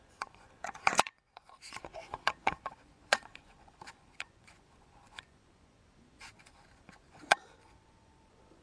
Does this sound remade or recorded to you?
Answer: remade